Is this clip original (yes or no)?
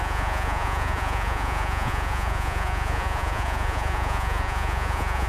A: no